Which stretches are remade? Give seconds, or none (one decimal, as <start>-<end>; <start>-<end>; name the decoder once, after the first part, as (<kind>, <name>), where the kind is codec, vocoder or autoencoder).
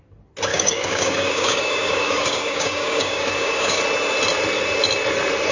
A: 0.5-3.8 (codec, DAC)